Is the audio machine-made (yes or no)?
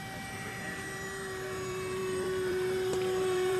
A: yes